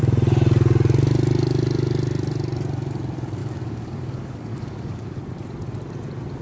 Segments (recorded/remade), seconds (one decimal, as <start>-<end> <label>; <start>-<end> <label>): 0.0-3.4 recorded; 3.4-5.2 remade; 5.2-6.4 recorded